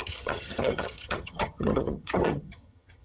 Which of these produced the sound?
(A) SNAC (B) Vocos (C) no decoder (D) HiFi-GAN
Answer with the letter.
D